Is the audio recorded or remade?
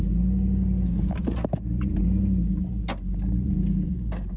recorded